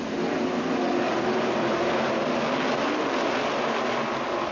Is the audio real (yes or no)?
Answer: yes